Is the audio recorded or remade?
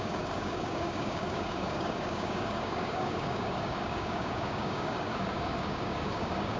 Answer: remade